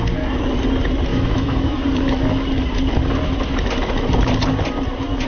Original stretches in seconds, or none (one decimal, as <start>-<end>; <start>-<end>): 0.0-1.1; 1.7-5.3